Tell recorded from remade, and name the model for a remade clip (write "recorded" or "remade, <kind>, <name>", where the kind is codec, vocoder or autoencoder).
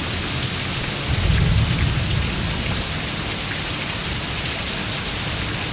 recorded